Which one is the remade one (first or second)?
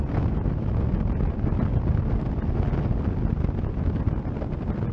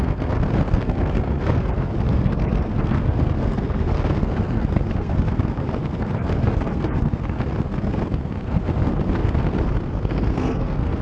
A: second